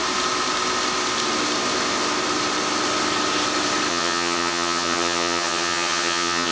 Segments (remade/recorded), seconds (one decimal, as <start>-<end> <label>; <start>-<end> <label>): 0.0-3.9 recorded; 3.9-6.5 remade